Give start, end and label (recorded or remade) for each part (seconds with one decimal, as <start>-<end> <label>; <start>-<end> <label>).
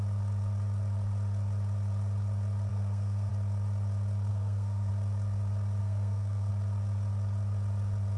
0.0-2.7 recorded; 2.7-3.3 remade; 3.3-4.3 recorded; 4.3-4.9 remade; 4.9-5.8 recorded; 5.8-6.5 remade; 6.5-8.2 recorded